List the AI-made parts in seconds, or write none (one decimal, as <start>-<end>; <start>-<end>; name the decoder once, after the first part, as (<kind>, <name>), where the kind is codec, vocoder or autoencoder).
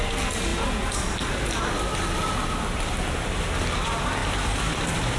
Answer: 4.2-5.2 (vocoder, BigVGAN v2)